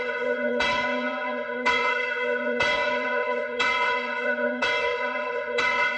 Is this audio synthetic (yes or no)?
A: yes